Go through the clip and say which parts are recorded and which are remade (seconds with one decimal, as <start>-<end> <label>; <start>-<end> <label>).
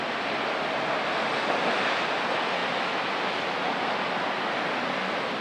0.0-5.4 recorded